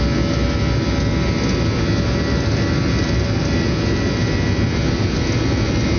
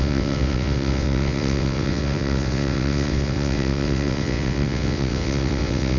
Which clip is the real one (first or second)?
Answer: first